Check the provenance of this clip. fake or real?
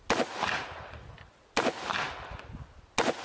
real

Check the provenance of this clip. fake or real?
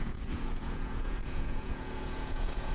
fake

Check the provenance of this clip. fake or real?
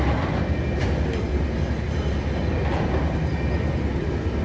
real